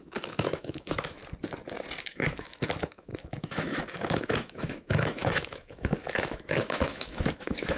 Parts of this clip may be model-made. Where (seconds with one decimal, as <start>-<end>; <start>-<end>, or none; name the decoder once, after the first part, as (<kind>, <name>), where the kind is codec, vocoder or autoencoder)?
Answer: 0.0-1.2 (autoencoder, DAC-VAE); 2.0-7.8